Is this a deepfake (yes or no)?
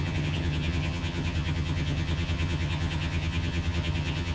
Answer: yes